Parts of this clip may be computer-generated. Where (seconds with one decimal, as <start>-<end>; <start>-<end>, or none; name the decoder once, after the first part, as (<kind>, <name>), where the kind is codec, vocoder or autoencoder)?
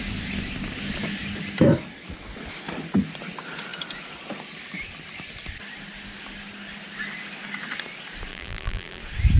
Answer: 8.3-9.0 (vocoder, BigVGAN v2)